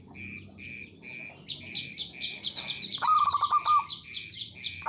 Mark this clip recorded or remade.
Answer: recorded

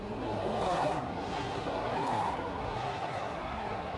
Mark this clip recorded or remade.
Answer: remade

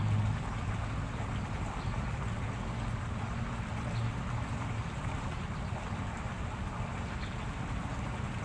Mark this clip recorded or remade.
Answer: recorded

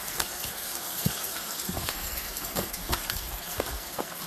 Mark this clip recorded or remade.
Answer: remade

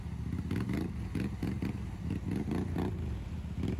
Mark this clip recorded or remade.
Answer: recorded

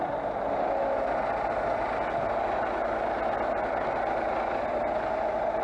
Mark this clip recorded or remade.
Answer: recorded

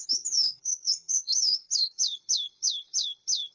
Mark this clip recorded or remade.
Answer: remade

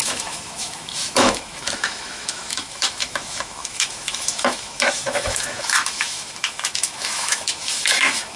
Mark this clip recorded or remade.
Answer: remade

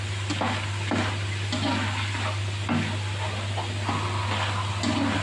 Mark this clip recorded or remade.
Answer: recorded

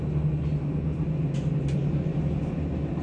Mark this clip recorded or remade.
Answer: recorded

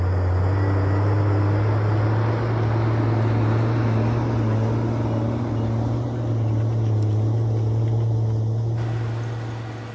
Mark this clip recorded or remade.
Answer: recorded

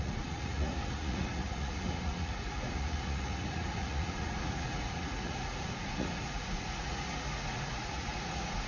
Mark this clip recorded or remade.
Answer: remade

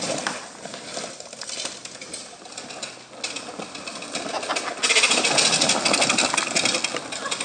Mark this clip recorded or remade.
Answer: recorded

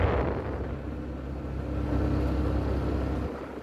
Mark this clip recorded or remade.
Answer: recorded